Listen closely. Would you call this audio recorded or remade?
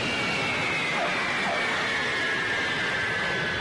recorded